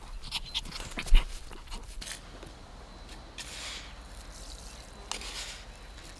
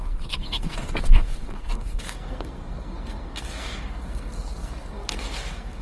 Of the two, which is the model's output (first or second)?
second